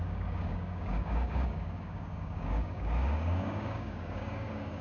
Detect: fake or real fake